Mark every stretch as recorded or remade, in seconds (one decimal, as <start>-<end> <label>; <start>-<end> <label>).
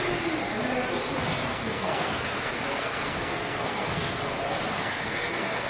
0.0-1.5 recorded; 1.5-4.2 remade; 4.2-4.8 recorded; 4.8-5.7 remade